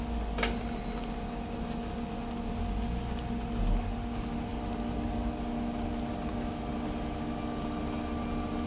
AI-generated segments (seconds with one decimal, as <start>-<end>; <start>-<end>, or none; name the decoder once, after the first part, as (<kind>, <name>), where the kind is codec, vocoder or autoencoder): none